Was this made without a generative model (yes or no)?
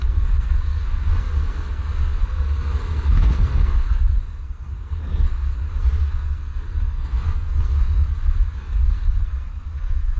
no